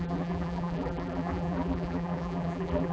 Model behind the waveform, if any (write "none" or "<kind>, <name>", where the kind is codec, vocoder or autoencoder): vocoder, BigVGAN v2